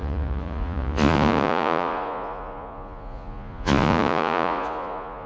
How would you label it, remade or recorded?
remade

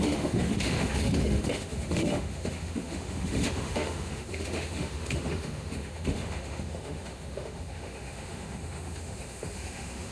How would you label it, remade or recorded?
remade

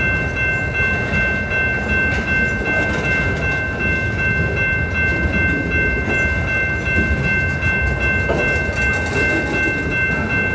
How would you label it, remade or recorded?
recorded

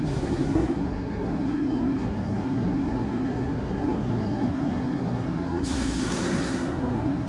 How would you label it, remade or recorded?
remade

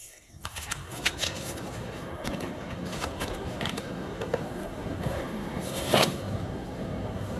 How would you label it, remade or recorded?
remade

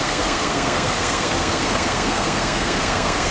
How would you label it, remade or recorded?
remade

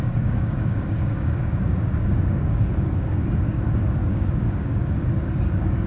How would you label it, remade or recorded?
remade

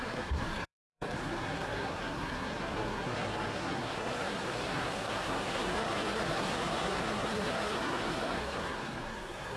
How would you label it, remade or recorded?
remade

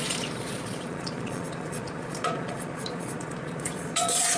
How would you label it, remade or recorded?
remade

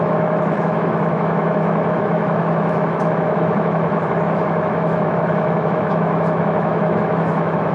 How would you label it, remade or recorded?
remade